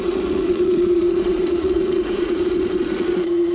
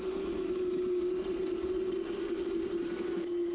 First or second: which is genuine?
second